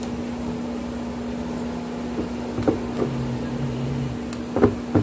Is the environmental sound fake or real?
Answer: real